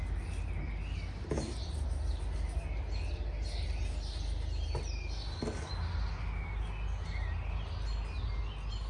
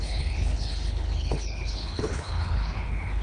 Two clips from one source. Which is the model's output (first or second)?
second